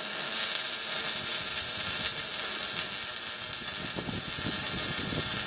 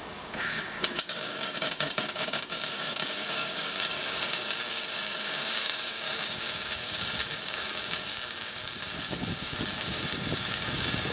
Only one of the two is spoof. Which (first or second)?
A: second